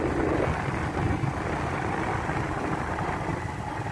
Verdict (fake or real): real